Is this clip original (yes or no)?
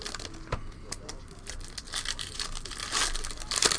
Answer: yes